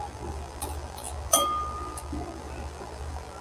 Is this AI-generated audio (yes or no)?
yes